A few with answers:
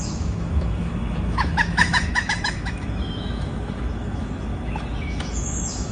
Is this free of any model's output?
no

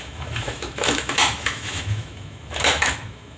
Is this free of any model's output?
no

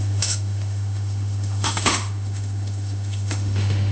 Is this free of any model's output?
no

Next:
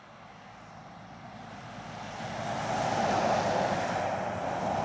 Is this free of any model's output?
yes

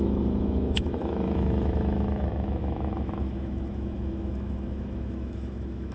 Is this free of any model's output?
no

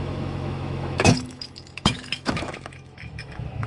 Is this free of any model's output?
no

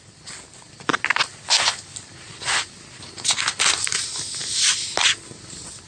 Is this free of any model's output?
yes